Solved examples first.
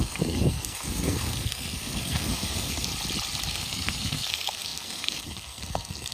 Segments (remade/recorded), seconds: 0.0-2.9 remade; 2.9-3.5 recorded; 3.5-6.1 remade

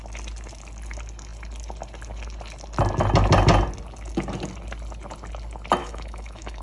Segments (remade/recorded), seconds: 0.0-5.8 recorded; 5.8-6.6 remade